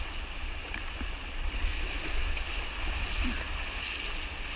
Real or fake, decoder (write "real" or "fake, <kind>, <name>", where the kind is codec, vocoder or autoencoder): real